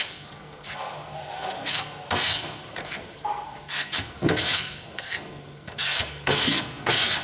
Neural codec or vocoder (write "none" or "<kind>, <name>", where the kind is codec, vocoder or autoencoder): codec, SNAC